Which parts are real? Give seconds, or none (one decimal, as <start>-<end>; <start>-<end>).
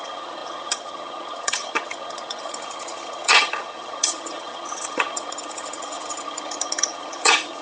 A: none